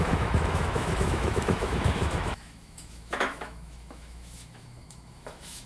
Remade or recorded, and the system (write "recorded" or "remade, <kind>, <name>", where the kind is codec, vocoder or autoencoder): remade, autoencoder, DAC-VAE